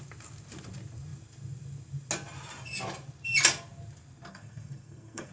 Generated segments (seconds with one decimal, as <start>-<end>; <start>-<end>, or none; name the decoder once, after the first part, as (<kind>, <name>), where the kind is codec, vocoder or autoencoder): 4.3-5.3 (codec, SNAC)